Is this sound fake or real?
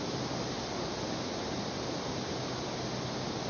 real